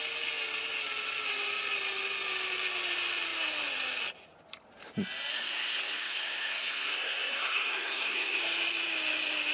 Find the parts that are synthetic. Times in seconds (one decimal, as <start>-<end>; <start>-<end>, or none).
5.3-8.4